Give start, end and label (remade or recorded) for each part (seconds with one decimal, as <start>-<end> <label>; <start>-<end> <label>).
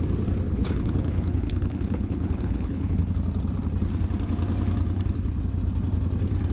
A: 0.0-0.5 recorded; 0.5-3.1 remade; 3.1-6.5 recorded